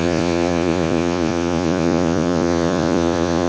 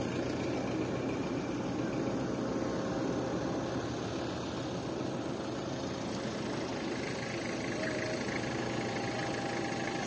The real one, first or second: second